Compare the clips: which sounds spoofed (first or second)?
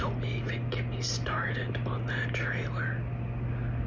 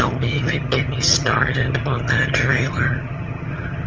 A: second